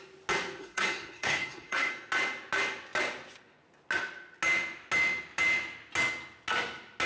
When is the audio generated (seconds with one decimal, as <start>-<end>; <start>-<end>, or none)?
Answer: 0.6-1.9